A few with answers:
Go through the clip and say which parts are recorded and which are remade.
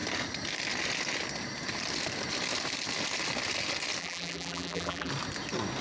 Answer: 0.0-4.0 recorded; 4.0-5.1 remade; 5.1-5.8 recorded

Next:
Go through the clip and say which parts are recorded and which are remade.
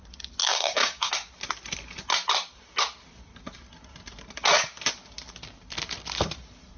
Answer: 0.0-0.4 recorded; 0.4-1.1 remade; 1.1-6.8 recorded